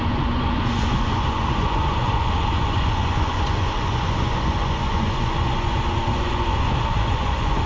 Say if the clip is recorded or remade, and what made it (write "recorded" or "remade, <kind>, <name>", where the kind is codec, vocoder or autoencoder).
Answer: remade, vocoder, Vocos